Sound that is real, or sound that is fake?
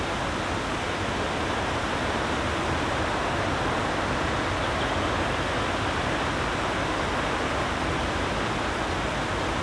real